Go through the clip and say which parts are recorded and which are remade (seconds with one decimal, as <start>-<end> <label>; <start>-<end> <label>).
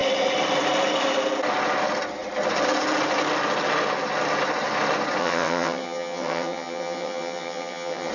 0.0-5.2 recorded; 5.2-8.1 remade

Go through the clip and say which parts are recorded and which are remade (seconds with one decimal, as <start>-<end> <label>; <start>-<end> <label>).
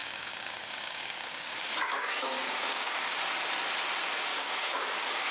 0.0-3.2 remade; 3.2-4.3 recorded; 4.3-5.3 remade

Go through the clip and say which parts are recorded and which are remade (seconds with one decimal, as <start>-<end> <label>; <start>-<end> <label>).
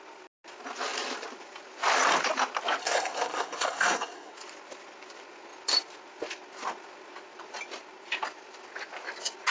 0.0-2.8 recorded; 2.8-4.3 remade; 4.3-9.5 recorded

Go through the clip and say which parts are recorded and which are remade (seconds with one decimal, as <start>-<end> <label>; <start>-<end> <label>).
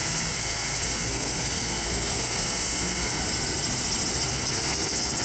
0.0-3.2 remade; 3.2-4.3 recorded; 4.3-5.2 remade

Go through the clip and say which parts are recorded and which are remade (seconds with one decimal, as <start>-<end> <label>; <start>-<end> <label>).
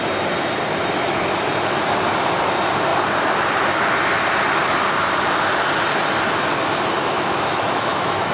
0.0-7.0 recorded; 7.0-8.3 remade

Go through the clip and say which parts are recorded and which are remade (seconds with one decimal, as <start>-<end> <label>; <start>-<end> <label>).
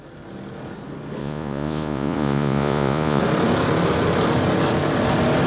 0.0-1.2 recorded; 1.2-3.2 remade; 3.2-5.5 recorded